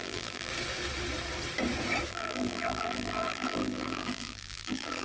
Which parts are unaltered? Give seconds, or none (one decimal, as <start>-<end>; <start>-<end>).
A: 0.5-2.1